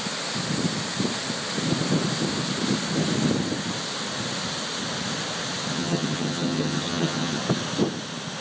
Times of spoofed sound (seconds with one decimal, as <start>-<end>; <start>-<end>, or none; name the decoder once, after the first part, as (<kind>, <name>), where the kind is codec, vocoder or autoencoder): 5.7-7.4 (vocoder, HiFi-GAN)